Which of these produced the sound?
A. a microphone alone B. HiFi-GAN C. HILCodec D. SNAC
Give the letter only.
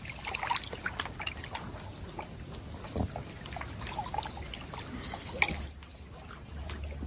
A